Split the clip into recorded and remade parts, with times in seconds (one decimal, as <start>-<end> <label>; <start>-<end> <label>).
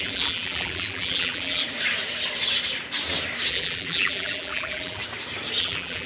0.0-1.6 remade; 1.6-3.5 recorded; 3.5-5.0 remade; 5.0-5.6 recorded; 5.6-6.1 remade